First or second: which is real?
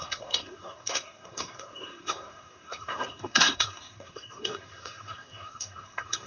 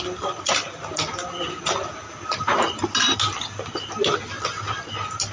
second